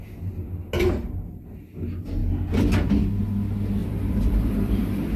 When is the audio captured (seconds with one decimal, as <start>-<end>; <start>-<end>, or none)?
0.0-1.0; 1.6-3.8; 4.8-5.2